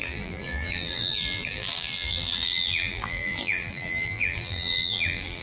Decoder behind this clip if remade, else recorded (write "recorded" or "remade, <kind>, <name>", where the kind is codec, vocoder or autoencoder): remade, vocoder, BigVGAN v2